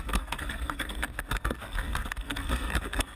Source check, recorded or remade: remade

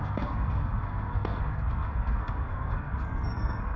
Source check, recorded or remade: remade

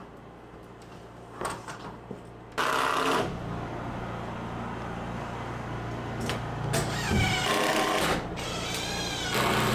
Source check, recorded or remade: recorded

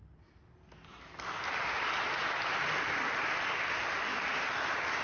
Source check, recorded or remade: recorded